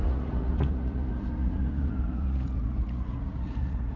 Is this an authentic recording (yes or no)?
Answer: no